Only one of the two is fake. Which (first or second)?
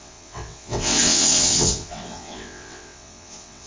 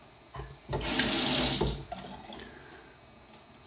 first